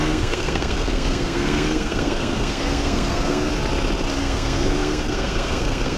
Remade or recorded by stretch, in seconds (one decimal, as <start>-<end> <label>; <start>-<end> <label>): 0.0-3.5 remade; 3.5-4.2 recorded; 4.2-6.0 remade